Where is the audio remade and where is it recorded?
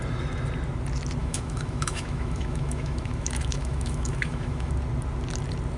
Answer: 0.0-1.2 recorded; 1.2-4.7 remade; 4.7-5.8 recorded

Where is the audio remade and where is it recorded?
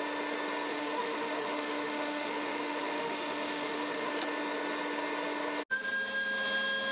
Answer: 0.0-0.7 recorded; 0.7-4.1 remade; 4.1-6.9 recorded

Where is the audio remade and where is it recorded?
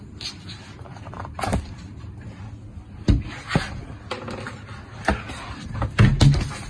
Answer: 0.0-6.7 recorded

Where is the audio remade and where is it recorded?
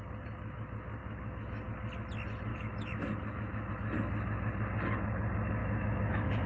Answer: 0.0-1.0 recorded; 1.0-1.7 remade; 1.7-2.5 recorded; 2.5-3.7 remade; 3.7-5.6 recorded; 5.6-6.5 remade